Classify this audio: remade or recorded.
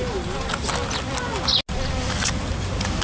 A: recorded